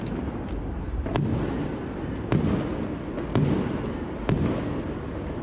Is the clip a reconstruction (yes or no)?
no